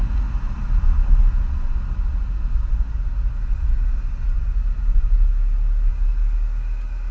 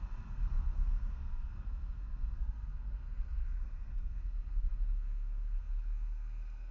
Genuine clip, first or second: first